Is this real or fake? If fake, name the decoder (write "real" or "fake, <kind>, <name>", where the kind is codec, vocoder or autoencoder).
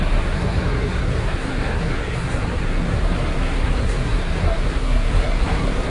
fake, codec, SNAC